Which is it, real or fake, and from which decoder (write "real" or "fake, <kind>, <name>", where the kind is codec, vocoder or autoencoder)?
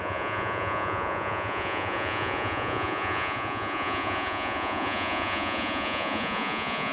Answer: fake, vocoder, Vocos